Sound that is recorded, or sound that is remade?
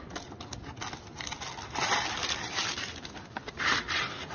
recorded